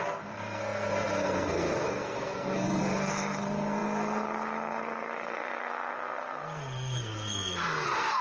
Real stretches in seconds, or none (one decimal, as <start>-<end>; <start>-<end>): none